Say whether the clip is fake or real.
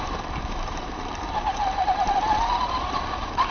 fake